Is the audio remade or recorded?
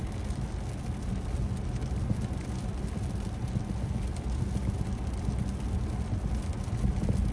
recorded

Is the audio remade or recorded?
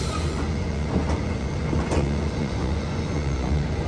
remade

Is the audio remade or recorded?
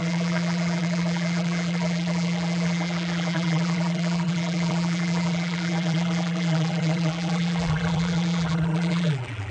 remade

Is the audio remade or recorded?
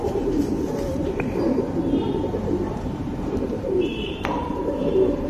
remade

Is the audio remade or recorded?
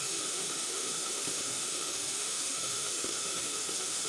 remade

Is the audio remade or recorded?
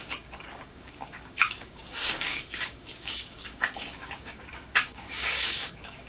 remade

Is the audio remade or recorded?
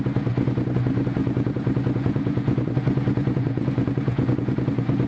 remade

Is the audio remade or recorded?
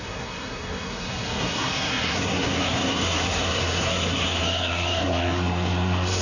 remade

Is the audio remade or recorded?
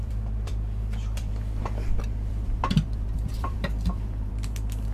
remade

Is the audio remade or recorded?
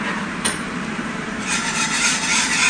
remade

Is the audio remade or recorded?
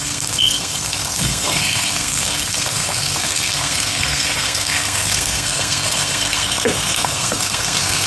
remade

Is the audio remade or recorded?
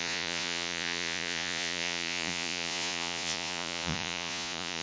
remade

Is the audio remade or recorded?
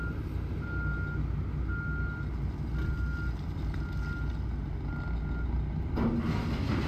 recorded